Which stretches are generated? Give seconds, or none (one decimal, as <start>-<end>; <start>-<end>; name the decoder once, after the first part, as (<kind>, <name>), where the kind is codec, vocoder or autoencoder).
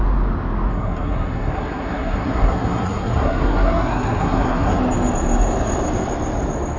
0.7-4.8 (codec, SNAC)